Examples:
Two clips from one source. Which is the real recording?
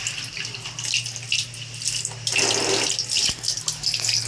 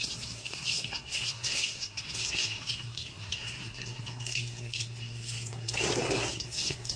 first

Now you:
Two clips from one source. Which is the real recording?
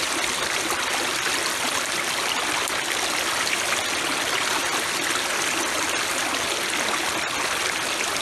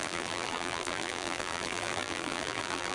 first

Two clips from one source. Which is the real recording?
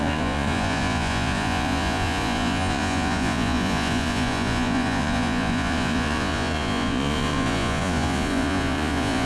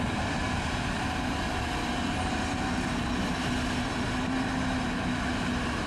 second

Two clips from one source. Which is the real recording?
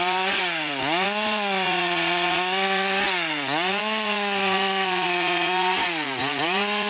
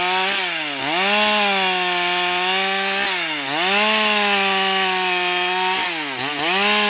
second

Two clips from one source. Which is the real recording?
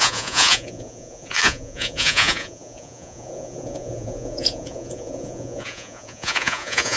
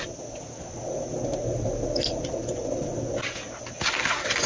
second